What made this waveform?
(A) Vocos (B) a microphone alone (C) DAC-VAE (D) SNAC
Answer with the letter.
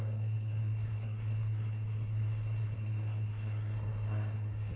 D